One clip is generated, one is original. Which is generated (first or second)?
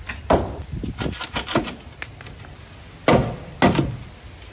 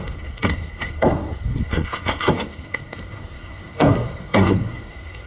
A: second